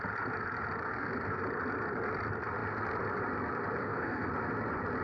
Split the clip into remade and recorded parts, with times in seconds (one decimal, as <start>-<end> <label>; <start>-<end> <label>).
0.0-0.8 recorded; 0.8-1.4 remade; 1.4-3.8 recorded; 3.8-4.3 remade; 4.3-5.0 recorded